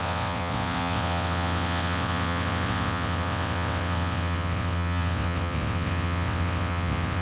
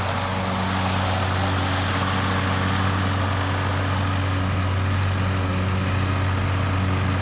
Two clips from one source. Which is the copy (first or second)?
first